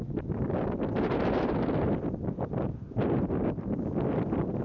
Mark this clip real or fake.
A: real